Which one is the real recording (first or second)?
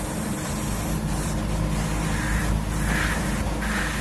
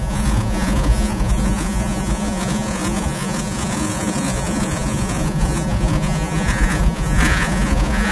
first